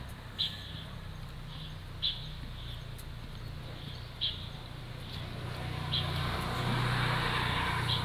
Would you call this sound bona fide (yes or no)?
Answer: yes